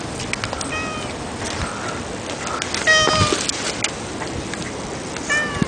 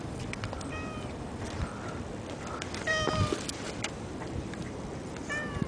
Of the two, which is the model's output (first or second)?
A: second